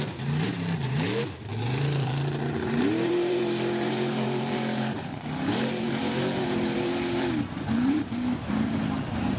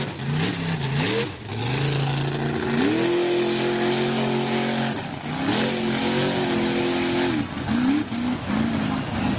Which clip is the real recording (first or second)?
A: second